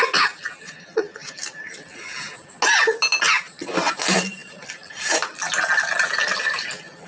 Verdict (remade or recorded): recorded